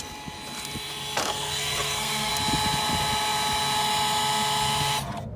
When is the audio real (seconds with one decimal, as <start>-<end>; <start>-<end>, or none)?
0.0-1.3; 2.3-5.4